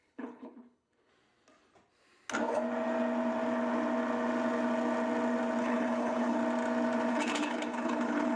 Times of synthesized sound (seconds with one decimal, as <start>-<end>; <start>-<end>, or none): 0.0-1.1; 5.6-6.4; 7.1-8.4